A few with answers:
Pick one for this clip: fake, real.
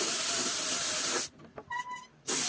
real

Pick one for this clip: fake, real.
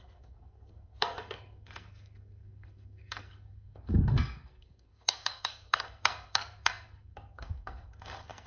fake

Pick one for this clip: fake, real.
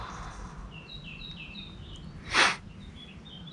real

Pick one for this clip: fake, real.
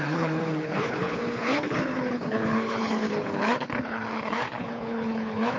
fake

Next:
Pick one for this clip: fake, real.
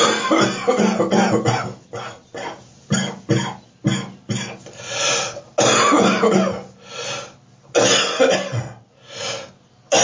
real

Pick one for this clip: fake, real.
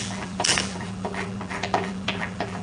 fake